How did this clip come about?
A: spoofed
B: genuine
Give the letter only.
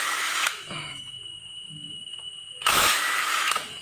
A